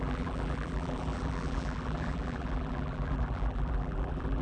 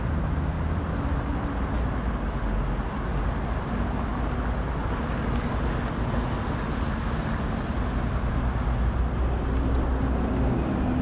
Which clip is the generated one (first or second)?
first